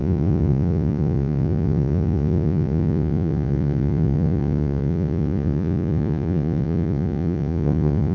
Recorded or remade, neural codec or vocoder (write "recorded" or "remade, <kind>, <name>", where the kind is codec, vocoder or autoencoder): remade, vocoder, Vocos